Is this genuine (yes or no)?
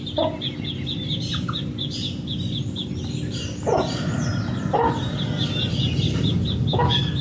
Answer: yes